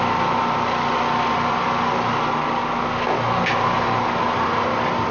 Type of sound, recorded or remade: recorded